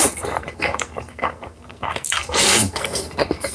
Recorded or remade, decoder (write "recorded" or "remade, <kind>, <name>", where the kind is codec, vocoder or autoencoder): remade, codec, SNAC